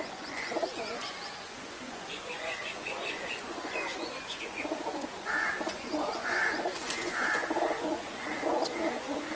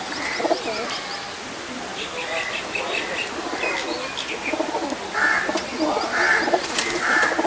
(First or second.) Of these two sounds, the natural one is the second